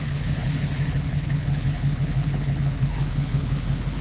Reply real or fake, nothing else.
fake